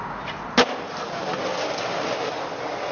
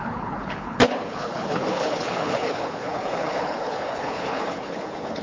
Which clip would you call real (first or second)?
first